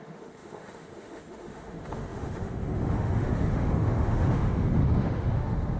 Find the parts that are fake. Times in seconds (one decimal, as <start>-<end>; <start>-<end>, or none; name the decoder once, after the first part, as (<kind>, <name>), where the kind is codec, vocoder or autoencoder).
0.0-5.8 (autoencoder, DAC-VAE)